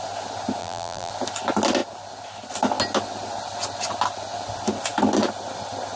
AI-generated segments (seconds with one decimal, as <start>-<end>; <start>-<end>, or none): 0.6-1.1